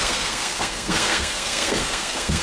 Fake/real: fake